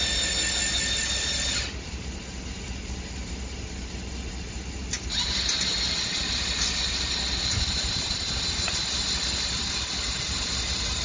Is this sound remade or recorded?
recorded